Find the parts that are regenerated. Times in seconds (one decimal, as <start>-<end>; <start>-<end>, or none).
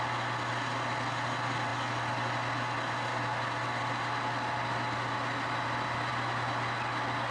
none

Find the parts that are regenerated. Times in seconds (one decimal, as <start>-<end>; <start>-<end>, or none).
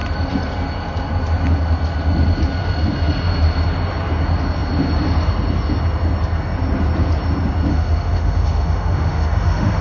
7.7-9.8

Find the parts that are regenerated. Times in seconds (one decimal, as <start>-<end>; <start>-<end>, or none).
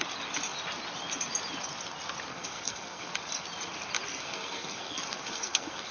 2.3-3.1; 4.1-5.9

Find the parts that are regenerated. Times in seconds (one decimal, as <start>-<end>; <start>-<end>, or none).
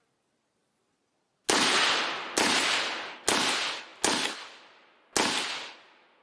none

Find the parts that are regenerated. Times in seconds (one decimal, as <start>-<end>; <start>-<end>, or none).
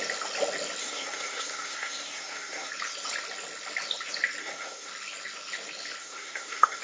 0.8-2.7; 4.4-4.9; 6.0-6.8